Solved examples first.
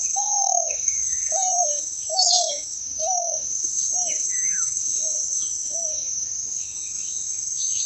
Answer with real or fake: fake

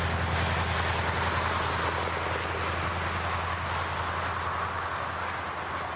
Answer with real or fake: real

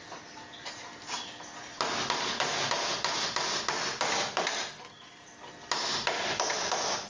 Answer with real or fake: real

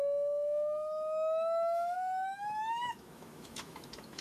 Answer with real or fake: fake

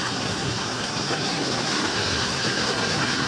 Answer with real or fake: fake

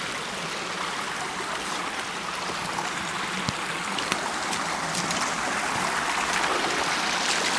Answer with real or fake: real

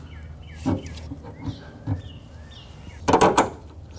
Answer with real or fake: real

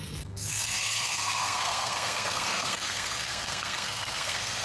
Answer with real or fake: fake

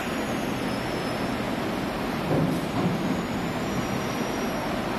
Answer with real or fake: real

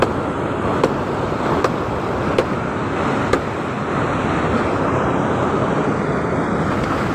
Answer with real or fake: real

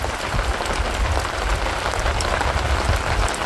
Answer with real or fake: real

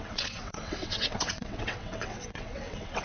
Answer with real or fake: fake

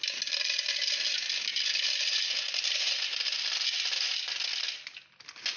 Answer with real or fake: real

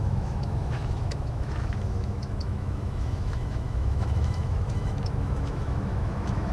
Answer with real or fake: fake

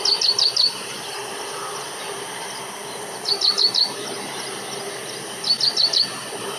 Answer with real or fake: fake